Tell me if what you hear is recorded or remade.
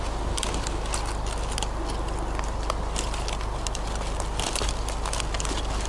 recorded